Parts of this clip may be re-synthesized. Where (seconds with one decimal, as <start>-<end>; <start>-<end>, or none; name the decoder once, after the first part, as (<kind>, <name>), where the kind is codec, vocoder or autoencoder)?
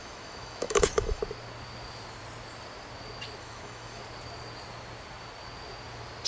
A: 0.0-1.2 (autoencoder, DAC-VAE); 3.4-4.0